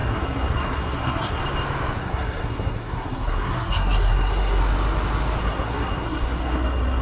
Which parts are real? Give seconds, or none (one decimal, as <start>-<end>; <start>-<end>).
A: 1.4-2.0; 4.6-5.4